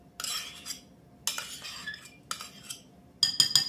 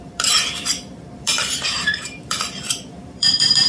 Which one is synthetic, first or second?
second